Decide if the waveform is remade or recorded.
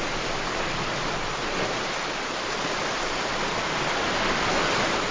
recorded